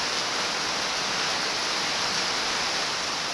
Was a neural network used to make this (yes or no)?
no